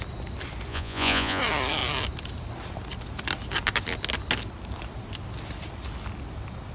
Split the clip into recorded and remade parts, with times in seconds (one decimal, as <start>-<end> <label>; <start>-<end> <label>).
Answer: 0.0-0.7 recorded; 0.7-1.4 remade; 1.4-6.7 recorded